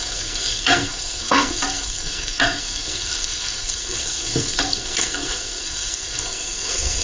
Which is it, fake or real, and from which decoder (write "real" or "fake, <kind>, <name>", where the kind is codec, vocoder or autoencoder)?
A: fake, codec, SNAC